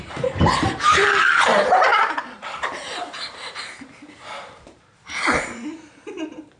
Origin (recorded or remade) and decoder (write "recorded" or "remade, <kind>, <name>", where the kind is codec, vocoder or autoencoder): remade, vocoder, BigVGAN v2